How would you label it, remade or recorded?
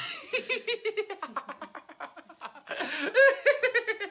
recorded